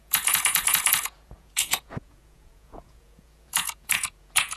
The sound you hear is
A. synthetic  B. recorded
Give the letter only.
A